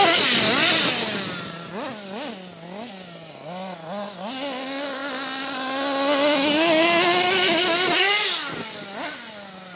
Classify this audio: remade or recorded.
recorded